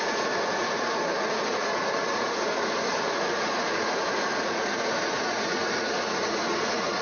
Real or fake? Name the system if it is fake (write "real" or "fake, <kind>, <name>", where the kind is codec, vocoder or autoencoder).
fake, vocoder, Vocos